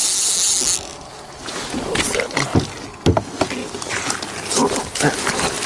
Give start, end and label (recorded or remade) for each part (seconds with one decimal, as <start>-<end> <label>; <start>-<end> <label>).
0.0-3.6 recorded; 3.6-5.7 remade